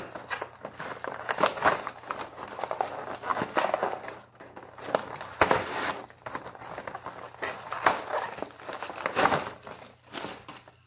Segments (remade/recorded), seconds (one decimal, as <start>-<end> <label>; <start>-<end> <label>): 0.0-10.9 recorded